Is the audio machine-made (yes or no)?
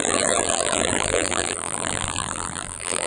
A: yes